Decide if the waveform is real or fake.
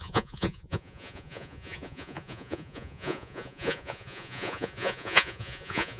fake